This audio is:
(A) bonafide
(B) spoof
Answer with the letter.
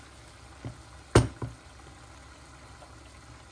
A